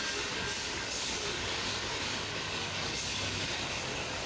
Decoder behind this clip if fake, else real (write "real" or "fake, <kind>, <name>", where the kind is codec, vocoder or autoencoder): fake, codec, DAC